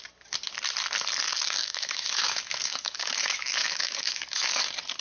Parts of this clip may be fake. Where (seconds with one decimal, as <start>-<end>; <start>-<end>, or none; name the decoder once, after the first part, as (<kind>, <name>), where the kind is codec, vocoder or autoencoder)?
1.6-4.6 (autoencoder, DAC-VAE)